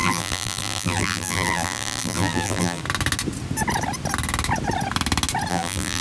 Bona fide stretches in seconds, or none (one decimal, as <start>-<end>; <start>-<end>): 2.8-5.5